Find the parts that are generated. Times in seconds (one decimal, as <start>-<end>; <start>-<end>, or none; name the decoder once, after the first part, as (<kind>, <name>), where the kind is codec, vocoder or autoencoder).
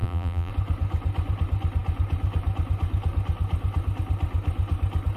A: 0.0-0.5 (vocoder, BigVGAN v2)